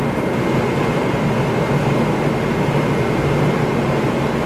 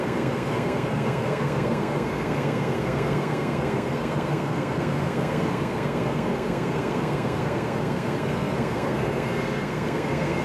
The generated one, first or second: second